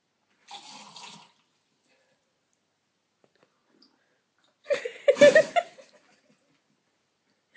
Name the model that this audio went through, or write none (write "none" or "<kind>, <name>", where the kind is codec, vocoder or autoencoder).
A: none